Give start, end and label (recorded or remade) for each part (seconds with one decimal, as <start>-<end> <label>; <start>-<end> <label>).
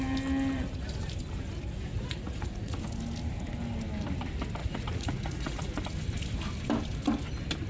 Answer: 0.0-1.9 recorded; 1.9-2.8 remade; 2.8-4.6 recorded; 4.6-5.8 remade; 5.8-7.7 recorded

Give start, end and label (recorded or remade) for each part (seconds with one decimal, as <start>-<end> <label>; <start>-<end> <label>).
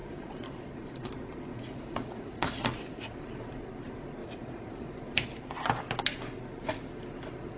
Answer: 0.0-1.1 remade; 1.1-1.5 recorded; 1.5-3.1 remade; 3.1-4.2 recorded; 4.2-4.9 remade; 4.9-7.6 recorded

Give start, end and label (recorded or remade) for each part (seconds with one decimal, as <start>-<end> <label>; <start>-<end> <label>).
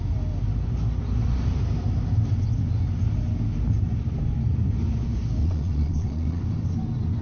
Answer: 0.0-5.4 recorded; 5.4-6.4 remade; 6.4-7.2 recorded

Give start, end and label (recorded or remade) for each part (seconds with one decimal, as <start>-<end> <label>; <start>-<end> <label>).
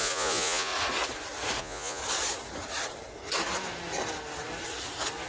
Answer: 0.0-0.7 remade; 0.7-1.6 recorded; 1.6-2.0 remade; 2.0-5.3 recorded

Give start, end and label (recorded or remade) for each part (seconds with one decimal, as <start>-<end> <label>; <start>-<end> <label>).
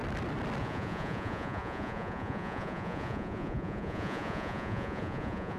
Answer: 0.0-0.6 recorded; 0.6-5.6 remade